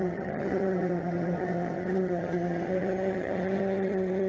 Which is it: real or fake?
fake